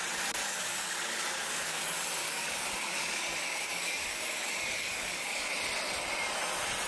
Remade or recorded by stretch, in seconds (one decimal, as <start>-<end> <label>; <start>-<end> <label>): 0.0-0.4 recorded; 0.4-1.8 remade; 1.8-2.2 recorded; 2.2-5.5 remade; 5.5-6.9 recorded